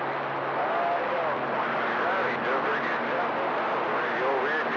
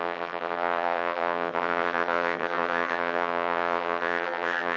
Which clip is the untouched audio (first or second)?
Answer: first